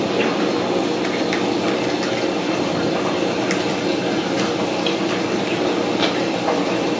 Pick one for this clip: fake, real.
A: real